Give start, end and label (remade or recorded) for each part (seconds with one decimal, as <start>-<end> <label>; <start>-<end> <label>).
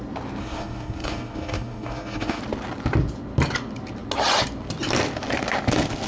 0.0-0.4 recorded; 0.4-2.4 remade; 2.4-6.1 recorded